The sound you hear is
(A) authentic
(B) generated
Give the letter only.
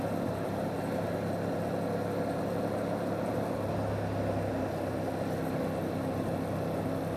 A